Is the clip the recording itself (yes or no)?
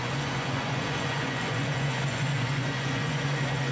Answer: no